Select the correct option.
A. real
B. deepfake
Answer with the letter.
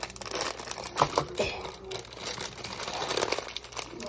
A